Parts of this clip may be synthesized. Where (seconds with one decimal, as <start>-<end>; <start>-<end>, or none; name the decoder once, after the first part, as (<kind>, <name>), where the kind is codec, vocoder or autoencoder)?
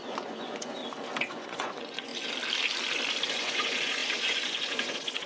0.0-0.8 (vocoder, Vocos); 1.3-2.1; 3.3-5.3